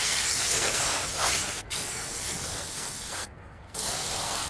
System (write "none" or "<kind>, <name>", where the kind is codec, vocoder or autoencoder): codec, SNAC